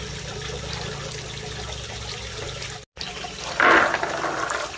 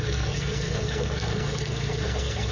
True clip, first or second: first